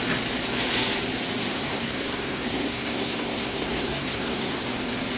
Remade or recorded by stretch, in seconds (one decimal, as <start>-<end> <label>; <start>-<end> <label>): 0.0-1.5 recorded; 1.5-4.6 remade; 4.6-5.2 recorded